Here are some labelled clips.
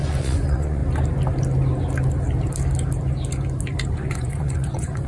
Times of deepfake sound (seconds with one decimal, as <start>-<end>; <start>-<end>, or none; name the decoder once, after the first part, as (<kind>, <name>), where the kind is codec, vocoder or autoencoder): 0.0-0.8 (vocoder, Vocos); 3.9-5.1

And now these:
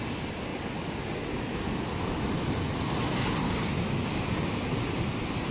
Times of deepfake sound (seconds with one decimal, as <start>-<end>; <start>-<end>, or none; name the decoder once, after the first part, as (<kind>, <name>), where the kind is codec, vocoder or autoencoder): none

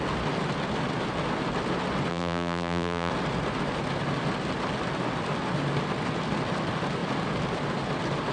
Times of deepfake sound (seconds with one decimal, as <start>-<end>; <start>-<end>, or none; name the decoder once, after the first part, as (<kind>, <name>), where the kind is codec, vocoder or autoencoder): 2.1-3.1 (vocoder, BigVGAN v2)

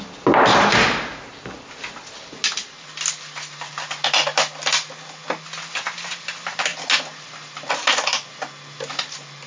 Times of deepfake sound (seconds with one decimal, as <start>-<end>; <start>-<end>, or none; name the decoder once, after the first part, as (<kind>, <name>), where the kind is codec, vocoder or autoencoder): none

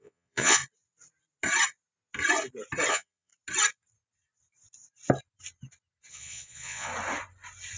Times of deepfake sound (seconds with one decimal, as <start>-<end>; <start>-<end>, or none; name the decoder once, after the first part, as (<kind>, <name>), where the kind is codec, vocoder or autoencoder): 0.0-0.6 (vocoder, Vocos); 2.9-3.3; 6.1-6.9